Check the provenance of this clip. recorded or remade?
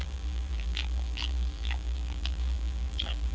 remade